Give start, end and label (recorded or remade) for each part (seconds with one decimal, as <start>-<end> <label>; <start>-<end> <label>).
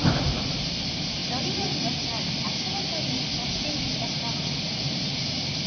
0.0-1.2 remade; 1.2-4.6 recorded; 4.6-5.7 remade